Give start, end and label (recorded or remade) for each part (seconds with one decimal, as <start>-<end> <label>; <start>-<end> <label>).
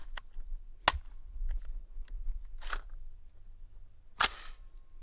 0.0-5.0 recorded